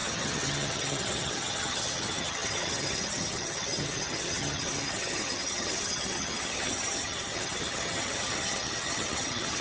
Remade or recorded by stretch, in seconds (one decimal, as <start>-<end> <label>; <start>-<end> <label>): 0.0-9.6 remade